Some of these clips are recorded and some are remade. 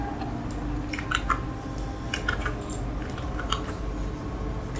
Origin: recorded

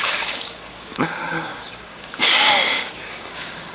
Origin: remade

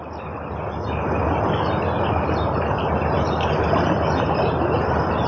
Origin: recorded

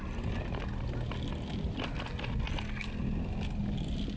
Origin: recorded